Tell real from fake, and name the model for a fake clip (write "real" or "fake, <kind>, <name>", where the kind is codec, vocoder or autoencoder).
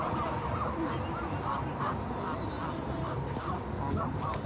real